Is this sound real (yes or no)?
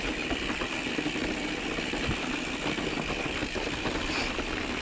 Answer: yes